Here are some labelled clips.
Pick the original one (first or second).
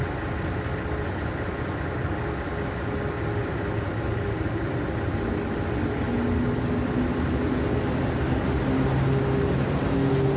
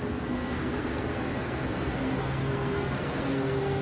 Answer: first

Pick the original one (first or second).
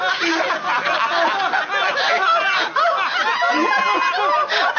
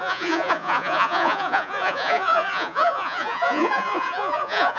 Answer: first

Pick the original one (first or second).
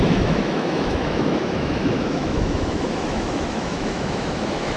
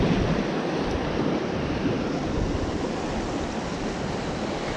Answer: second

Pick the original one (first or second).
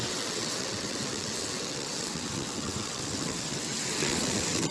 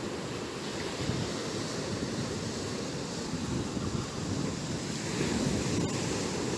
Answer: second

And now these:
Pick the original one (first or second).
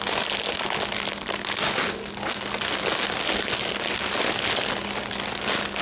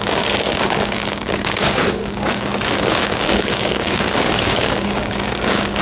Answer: first